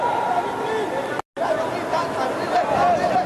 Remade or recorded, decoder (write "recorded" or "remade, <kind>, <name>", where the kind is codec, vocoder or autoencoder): recorded